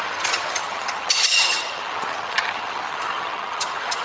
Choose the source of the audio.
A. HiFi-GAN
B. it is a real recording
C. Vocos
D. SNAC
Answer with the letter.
A